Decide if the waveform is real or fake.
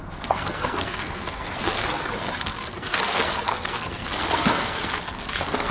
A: fake